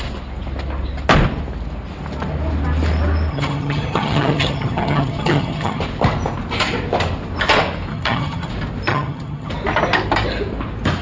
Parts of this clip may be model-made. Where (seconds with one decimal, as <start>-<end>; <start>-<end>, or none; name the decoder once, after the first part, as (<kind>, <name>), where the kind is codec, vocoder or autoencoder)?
3.3-5.8 (vocoder, HiFi-GAN); 7.9-8.5; 8.9-9.5